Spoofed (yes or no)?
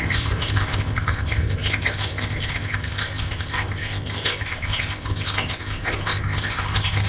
yes